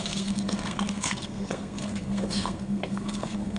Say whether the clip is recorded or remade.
remade